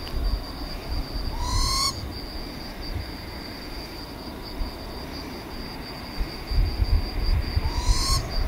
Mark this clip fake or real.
real